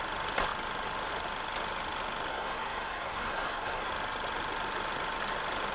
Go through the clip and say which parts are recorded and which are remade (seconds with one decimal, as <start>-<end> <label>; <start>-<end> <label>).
0.0-2.3 recorded; 2.3-3.9 remade; 3.9-5.7 recorded